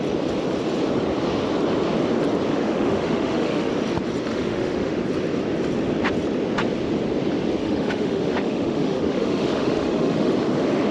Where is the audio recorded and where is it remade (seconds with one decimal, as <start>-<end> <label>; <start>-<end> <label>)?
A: 0.0-2.5 recorded; 2.5-3.7 remade; 3.7-4.3 recorded; 4.3-5.0 remade; 5.0-7.6 recorded; 7.6-10.3 remade; 10.3-10.9 recorded